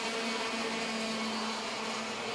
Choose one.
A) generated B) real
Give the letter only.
B